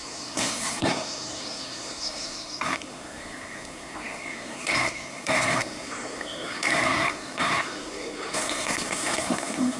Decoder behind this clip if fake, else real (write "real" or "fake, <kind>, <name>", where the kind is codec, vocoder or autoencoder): fake, codec, SNAC